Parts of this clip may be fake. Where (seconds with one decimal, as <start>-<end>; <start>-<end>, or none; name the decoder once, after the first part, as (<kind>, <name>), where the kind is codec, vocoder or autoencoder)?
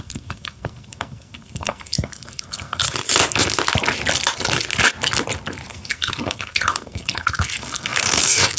0.0-2.8 (codec, SNAC); 5.7-8.6